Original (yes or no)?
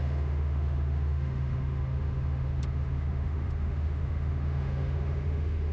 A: no